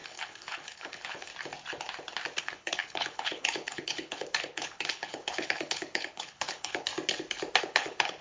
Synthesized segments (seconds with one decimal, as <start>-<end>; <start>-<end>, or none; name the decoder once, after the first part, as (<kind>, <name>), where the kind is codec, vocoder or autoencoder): 0.0-1.3 (codec, HILCodec); 2.4-6.9; 7.6-8.2